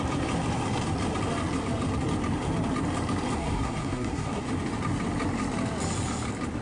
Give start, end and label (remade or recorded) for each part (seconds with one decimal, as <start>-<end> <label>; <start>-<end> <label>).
0.0-3.4 recorded; 3.4-4.4 remade; 4.4-6.6 recorded